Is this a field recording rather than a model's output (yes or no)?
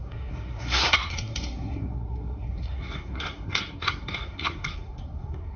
no